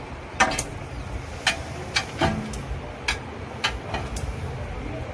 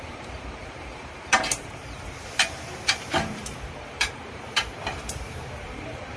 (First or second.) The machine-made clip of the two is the second